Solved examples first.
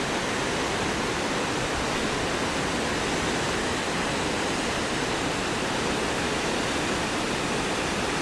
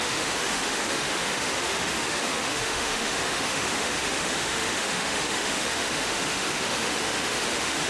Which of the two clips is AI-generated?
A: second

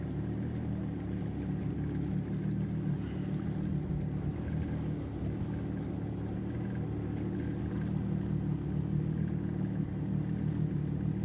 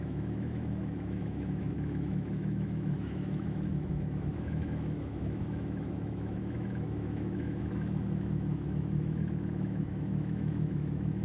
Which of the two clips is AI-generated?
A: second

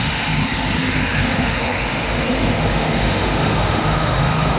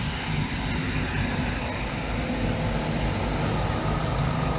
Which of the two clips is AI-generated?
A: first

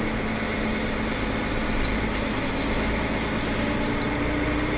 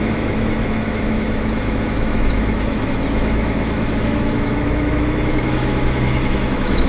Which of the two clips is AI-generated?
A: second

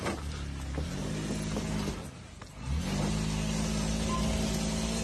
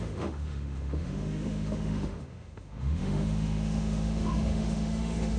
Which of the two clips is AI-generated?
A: second